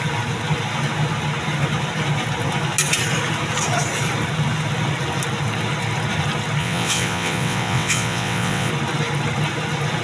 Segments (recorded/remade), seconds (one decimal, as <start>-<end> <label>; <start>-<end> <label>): 0.0-6.6 recorded; 6.6-8.7 remade; 8.7-10.0 recorded